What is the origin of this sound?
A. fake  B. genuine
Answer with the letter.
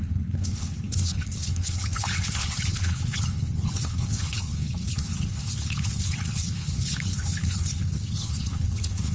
A